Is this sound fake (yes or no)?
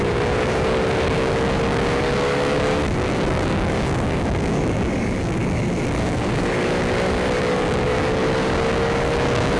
yes